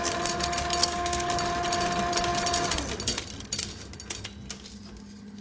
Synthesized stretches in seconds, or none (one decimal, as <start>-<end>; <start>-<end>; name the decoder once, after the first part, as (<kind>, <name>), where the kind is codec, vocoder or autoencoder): 0.8-1.3 (codec, SNAC)